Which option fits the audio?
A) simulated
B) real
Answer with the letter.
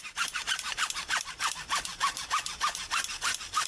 B